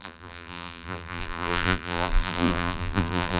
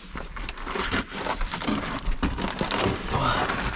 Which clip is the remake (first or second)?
first